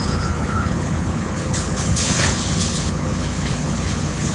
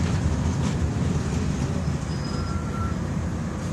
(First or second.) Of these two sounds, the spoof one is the first